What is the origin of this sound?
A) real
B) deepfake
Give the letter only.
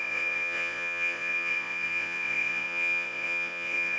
B